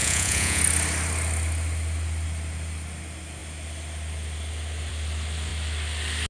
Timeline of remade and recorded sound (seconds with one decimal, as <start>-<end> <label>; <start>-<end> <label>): 0.0-0.6 remade; 0.6-6.3 recorded